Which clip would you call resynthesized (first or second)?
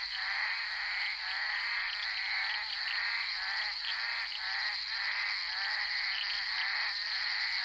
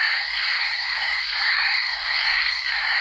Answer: second